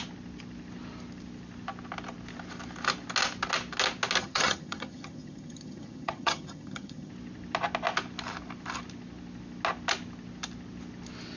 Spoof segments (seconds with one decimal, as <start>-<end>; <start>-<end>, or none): 4.2-7.1